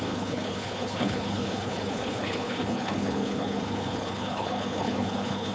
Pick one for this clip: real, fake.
fake